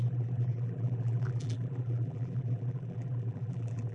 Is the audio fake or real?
fake